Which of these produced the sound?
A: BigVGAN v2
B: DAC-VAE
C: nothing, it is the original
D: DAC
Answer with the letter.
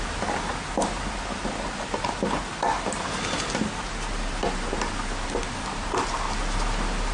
C